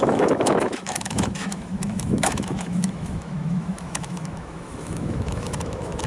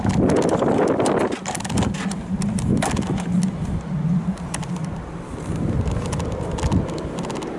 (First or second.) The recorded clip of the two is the second